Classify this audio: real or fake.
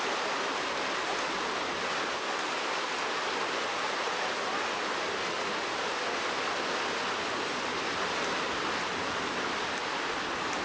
real